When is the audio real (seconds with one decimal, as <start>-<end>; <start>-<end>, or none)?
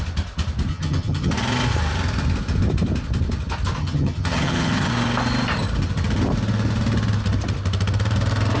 0.0-0.7; 1.3-3.8; 4.9-8.6